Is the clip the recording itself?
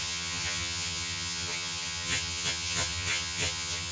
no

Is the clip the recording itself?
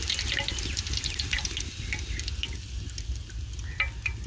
yes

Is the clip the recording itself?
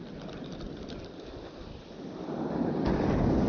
yes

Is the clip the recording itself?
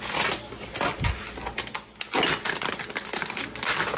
yes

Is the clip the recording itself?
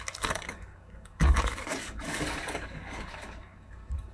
no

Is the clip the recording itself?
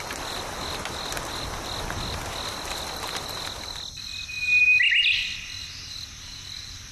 yes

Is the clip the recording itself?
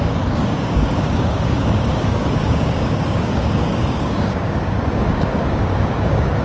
no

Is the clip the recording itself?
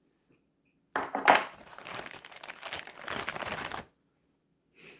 yes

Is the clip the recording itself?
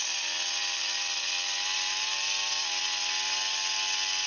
yes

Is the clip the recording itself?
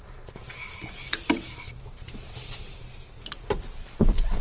yes